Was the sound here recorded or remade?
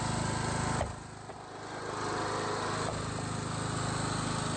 recorded